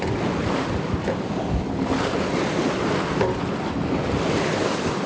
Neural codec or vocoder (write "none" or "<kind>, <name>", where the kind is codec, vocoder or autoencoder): none